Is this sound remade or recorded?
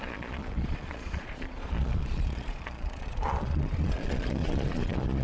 remade